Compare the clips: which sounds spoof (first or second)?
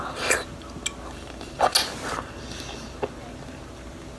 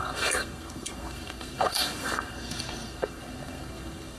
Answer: second